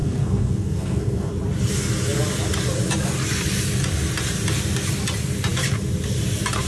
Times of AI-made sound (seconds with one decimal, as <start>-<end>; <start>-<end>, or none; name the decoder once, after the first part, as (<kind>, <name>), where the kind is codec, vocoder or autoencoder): 0.0-1.3 (codec, SNAC)